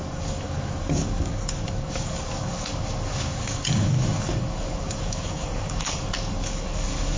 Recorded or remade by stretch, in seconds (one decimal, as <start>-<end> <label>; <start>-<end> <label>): 0.0-7.2 remade

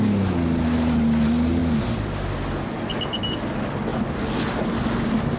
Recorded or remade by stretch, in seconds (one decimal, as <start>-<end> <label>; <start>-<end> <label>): 0.0-5.4 recorded

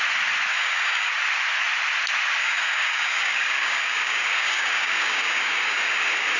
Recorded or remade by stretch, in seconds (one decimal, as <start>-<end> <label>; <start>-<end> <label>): 0.0-0.5 recorded; 0.5-1.1 remade; 1.1-2.4 recorded; 2.4-6.4 remade

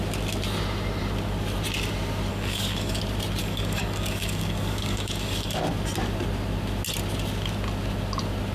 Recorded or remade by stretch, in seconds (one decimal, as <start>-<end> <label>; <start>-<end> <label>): 0.0-2.3 recorded; 2.3-3.0 remade; 3.0-3.4 recorded; 3.4-5.6 remade; 5.6-8.5 recorded